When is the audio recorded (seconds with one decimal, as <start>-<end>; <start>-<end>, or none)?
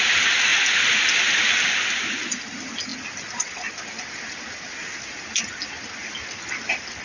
0.0-7.0